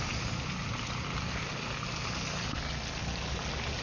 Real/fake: real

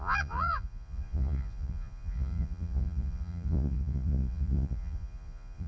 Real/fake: fake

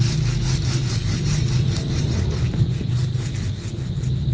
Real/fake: real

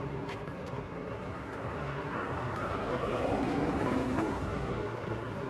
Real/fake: fake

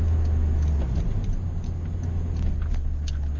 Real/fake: real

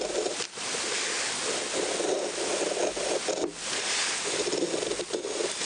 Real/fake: real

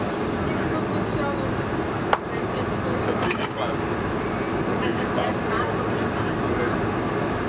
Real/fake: real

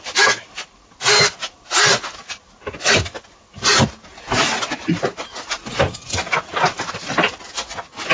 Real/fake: real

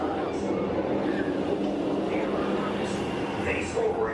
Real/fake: real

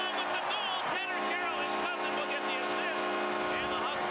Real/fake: real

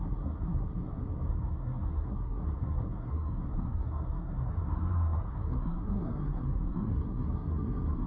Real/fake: fake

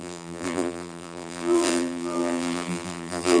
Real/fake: fake